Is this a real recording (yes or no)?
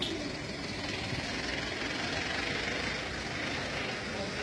yes